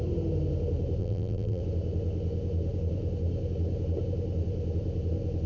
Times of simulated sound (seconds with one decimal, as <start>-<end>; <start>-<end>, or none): 1.0-1.6